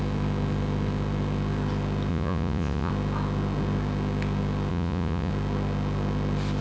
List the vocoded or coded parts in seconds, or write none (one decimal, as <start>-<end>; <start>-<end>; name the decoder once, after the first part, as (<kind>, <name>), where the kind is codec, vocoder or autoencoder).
2.1-2.9 (vocoder, Vocos); 4.7-5.3